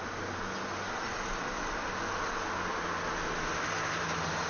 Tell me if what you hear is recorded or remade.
recorded